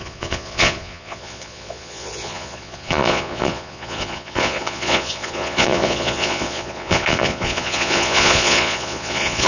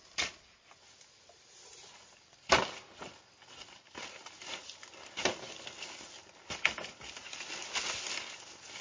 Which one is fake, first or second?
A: first